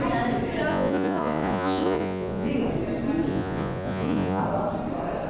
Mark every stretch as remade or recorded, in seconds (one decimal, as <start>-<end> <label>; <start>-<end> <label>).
0.0-0.7 recorded; 0.7-2.5 remade; 2.5-3.3 recorded; 3.3-4.4 remade; 4.4-5.3 recorded